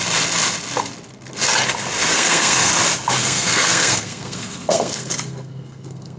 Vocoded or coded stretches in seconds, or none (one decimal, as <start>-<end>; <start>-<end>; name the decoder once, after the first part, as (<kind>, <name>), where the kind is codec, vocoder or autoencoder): 2.1-2.7 (codec, SNAC); 3.2-6.2